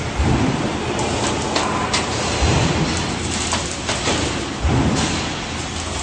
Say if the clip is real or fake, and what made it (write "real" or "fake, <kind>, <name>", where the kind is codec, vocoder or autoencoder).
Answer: real